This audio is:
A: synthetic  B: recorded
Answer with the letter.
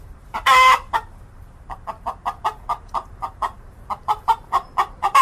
A